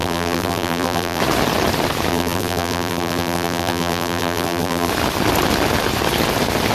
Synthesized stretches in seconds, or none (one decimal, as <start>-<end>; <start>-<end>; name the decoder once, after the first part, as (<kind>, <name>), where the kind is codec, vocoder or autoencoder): 0.0-1.2 (vocoder, BigVGAN v2); 2.1-4.9